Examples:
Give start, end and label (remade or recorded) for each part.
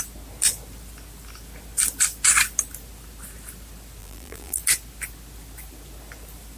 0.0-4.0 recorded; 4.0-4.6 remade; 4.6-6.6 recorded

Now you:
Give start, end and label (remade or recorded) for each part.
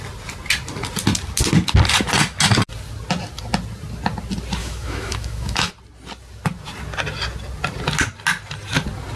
0.0-4.6 recorded; 4.6-5.7 remade; 5.7-9.2 recorded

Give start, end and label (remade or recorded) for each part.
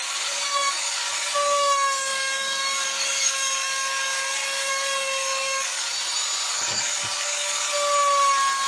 0.0-5.9 remade; 5.9-6.5 recorded; 6.5-7.7 remade; 7.7-8.7 recorded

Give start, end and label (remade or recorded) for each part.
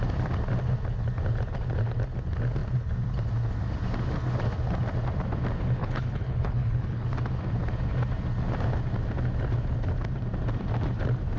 0.0-5.8 recorded; 5.8-7.1 remade; 7.1-11.4 recorded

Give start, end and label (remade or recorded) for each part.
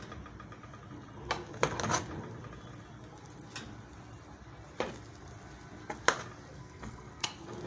0.0-6.5 recorded; 6.5-7.3 remade; 7.3-7.7 recorded